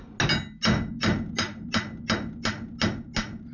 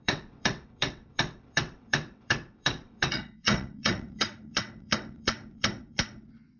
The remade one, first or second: second